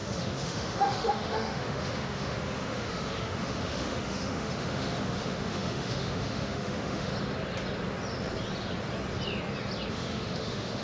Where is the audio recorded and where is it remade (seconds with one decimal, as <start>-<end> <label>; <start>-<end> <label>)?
0.0-7.1 remade; 7.1-9.9 recorded; 9.9-10.8 remade